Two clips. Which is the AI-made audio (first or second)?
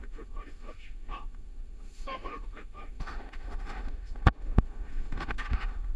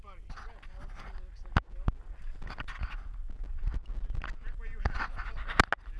first